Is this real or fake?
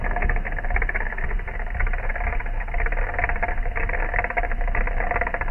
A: real